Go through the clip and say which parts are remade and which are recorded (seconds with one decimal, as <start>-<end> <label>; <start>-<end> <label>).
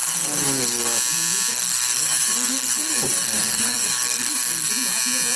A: 0.0-0.9 remade; 0.9-1.5 recorded; 1.5-4.7 remade; 4.7-5.4 recorded